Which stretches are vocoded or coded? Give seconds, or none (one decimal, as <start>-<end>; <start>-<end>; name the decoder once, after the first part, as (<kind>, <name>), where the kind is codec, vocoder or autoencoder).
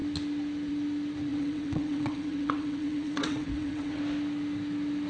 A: 1.3-4.0 (vocoder, WaveNeXt)